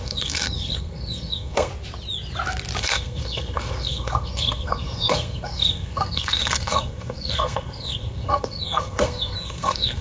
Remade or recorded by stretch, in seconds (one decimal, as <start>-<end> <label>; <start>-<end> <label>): 0.0-1.7 remade; 1.7-2.8 recorded; 2.8-10.0 remade